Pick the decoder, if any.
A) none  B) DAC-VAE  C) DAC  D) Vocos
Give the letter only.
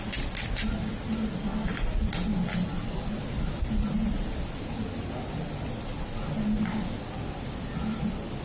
A